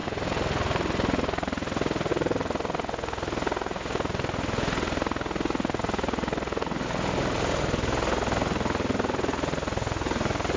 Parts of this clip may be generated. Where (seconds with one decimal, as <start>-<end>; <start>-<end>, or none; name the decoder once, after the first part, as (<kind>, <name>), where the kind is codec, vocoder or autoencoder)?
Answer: 0.0-2.1 (vocoder, BigVGAN v2)